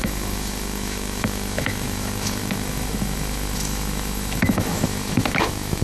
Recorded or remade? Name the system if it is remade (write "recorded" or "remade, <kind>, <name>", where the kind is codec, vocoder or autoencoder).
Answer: remade, autoencoder, DAC-VAE